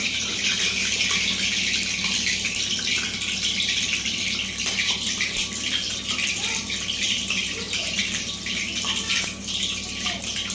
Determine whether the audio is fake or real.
real